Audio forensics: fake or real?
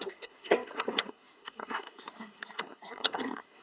fake